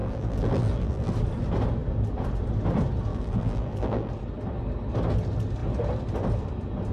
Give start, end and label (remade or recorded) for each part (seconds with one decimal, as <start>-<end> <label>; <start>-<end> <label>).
0.0-1.1 remade; 1.1-3.1 recorded; 3.1-4.1 remade; 4.1-6.9 recorded